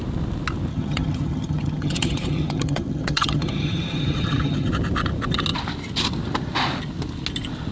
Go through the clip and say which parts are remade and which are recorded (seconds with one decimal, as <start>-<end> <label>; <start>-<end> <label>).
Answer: 0.0-0.7 recorded; 0.7-4.7 remade; 4.7-7.7 recorded